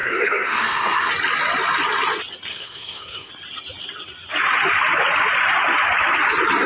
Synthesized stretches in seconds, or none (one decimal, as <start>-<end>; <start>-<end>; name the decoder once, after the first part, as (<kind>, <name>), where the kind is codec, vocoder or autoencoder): 0.0-1.1 (codec, SNAC); 2.5-3.3